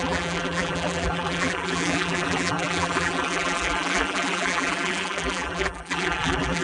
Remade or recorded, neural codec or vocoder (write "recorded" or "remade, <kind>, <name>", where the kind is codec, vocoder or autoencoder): remade, vocoder, BigVGAN v2